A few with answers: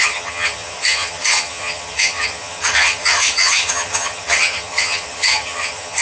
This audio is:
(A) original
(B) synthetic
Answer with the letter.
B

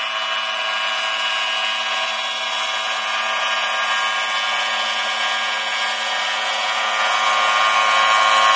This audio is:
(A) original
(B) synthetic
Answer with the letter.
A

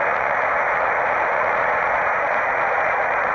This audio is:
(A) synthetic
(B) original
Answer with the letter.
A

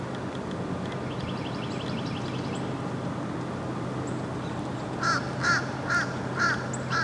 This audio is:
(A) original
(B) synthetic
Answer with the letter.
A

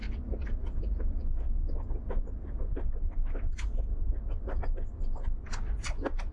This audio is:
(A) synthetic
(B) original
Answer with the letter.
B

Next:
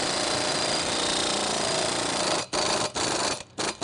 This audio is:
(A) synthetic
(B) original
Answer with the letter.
B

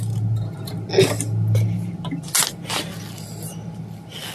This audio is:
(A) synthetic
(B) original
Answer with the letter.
B